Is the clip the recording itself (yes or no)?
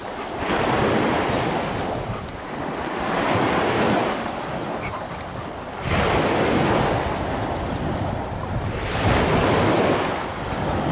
yes